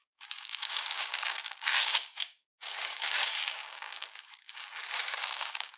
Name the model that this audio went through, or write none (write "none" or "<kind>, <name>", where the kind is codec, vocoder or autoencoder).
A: codec, DAC